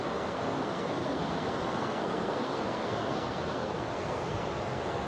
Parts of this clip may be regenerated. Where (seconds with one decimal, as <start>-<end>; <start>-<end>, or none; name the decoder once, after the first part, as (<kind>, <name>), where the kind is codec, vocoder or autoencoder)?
0.0-5.1 (codec, SNAC)